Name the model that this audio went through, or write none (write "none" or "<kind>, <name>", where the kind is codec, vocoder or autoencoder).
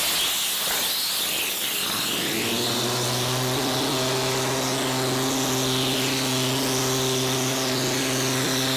none